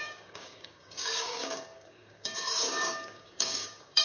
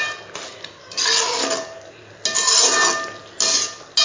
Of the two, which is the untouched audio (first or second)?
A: second